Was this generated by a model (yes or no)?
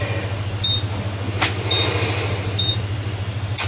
no